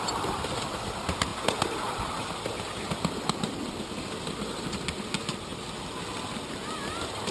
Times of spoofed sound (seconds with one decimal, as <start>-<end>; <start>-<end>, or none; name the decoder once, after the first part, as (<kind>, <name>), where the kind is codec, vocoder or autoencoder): none